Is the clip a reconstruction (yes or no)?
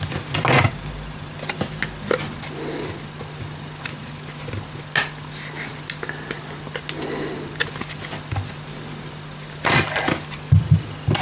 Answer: no